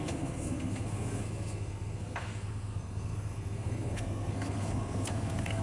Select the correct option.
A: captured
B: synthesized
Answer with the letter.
B